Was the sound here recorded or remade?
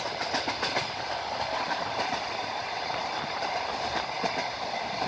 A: recorded